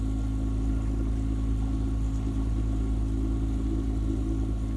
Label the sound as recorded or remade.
recorded